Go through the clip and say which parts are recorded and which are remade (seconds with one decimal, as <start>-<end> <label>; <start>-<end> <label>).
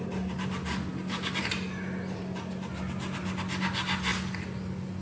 0.0-5.0 recorded